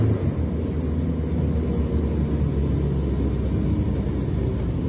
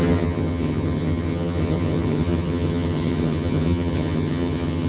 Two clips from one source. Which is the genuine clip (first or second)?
first